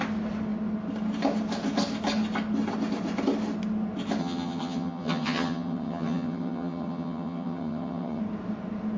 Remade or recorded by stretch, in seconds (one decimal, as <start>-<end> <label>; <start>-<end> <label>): 0.0-4.2 recorded; 4.2-8.2 remade; 8.2-9.0 recorded